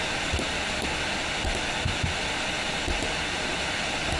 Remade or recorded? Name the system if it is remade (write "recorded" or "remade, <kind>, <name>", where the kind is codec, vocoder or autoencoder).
recorded